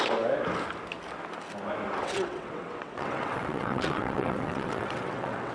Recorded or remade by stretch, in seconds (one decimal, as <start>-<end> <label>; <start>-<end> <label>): 0.0-2.0 recorded; 2.0-5.5 remade